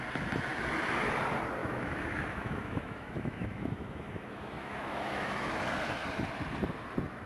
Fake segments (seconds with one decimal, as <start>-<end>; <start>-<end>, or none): 1.6-5.5